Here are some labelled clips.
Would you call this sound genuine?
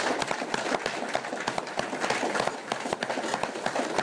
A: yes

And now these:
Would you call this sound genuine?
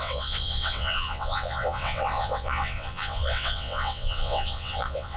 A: no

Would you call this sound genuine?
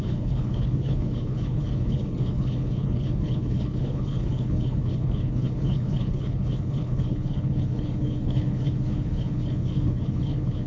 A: no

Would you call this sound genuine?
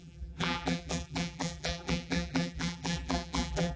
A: no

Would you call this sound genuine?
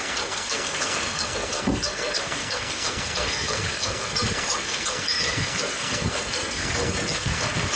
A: no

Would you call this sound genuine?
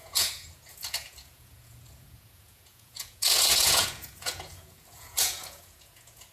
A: no